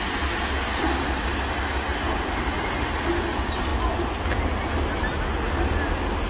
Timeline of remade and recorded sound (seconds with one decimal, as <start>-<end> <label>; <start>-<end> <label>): 0.0-6.3 recorded